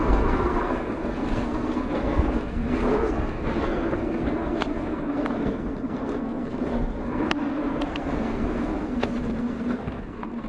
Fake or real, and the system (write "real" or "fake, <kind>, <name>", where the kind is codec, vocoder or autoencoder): fake, codec, SNAC